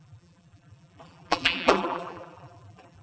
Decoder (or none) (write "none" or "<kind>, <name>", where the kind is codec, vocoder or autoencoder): vocoder, BigVGAN v2